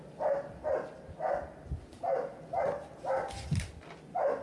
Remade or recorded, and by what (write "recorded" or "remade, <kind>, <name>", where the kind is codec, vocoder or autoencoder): recorded